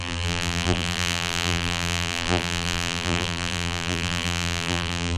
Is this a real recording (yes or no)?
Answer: no